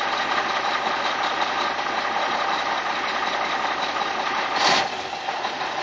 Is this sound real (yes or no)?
yes